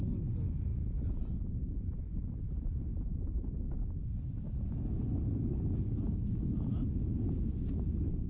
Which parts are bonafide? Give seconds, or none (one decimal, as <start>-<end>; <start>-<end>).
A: 0.0-0.7; 3.7-8.3